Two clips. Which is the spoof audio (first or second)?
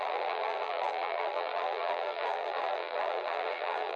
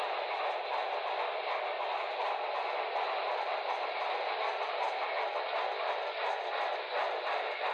first